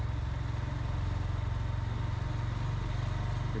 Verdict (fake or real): real